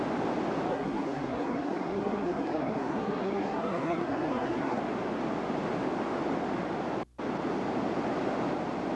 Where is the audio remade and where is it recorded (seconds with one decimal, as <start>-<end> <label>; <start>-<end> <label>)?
0.0-0.7 recorded; 0.7-4.8 remade; 4.8-9.0 recorded